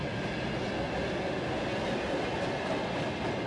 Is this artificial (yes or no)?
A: no